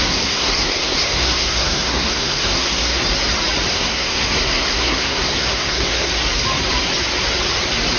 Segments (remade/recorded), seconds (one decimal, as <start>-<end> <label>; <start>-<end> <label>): 0.0-3.0 remade; 3.0-3.7 recorded; 3.7-6.1 remade; 6.1-8.0 recorded